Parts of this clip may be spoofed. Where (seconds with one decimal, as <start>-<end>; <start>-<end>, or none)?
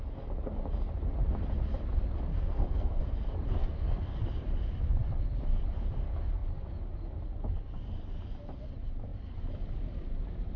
2.3-3.0; 3.6-4.2